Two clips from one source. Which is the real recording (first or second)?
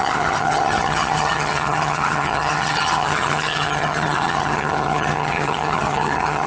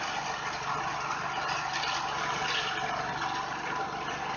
second